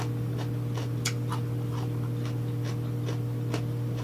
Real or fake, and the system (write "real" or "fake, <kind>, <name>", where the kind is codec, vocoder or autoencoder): real